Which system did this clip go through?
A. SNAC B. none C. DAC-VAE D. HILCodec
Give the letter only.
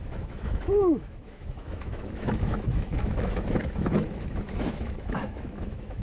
C